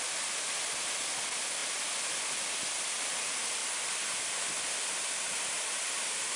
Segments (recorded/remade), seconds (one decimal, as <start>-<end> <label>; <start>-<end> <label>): 0.0-6.4 recorded